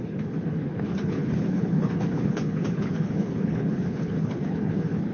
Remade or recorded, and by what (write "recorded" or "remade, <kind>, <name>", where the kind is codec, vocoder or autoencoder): remade, codec, HILCodec